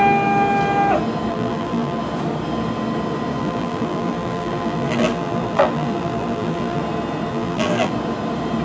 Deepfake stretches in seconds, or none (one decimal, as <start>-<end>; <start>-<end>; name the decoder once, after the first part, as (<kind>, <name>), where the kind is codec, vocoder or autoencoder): 1.3-2.0 (vocoder, BigVGAN v2); 3.4-6.8; 7.3-7.9